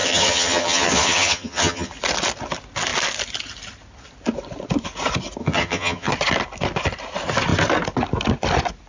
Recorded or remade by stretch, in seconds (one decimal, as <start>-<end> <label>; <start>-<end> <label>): 0.0-1.9 remade; 1.9-5.4 recorded; 5.4-6.1 remade; 6.1-8.9 recorded